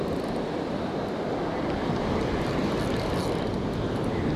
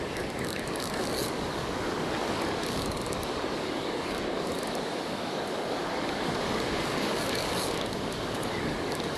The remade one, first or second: second